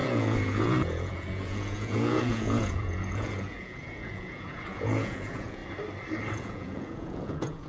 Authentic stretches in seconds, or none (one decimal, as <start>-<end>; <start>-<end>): 5.6-6.3